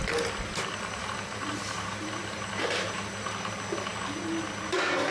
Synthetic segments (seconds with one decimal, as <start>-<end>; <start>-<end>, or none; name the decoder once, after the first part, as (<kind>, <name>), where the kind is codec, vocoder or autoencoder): 1.0-3.5 (vocoder, BigVGAN v2)